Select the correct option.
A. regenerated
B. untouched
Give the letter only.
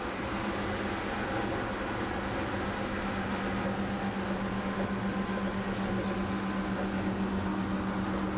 B